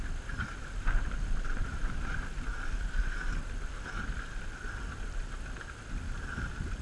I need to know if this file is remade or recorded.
recorded